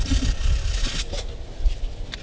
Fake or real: real